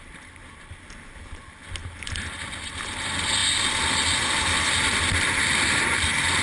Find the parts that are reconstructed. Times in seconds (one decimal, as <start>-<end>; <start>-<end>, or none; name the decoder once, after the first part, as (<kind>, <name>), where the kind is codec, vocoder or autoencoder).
none